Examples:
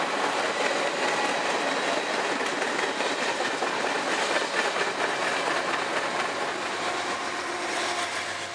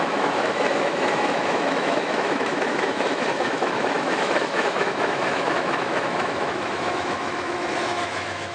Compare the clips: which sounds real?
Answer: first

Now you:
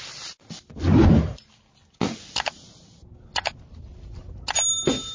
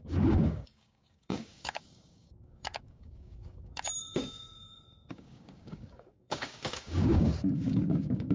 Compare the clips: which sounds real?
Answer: first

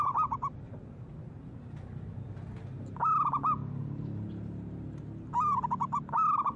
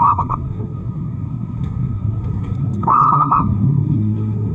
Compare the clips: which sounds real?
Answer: first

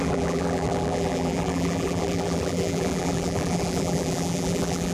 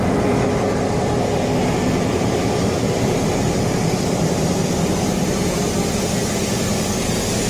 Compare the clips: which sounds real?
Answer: second